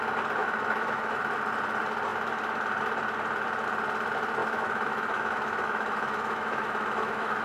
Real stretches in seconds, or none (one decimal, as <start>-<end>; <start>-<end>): 0.0-0.4; 1.2-4.4